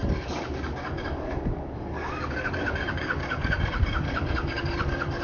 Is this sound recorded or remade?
remade